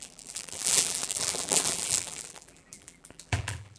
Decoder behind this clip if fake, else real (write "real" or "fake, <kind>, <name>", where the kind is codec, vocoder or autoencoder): fake, vocoder, BigVGAN v2